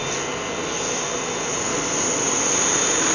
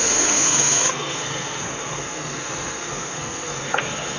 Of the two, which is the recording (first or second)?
first